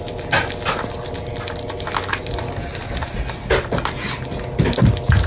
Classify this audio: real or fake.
real